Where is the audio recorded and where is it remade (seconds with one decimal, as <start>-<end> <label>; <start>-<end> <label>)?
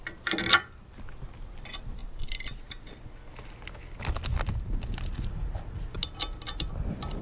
0.0-7.2 recorded